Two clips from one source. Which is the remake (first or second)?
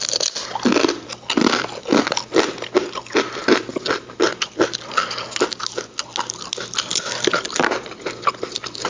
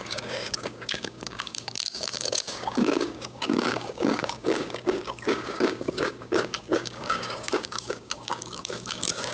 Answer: second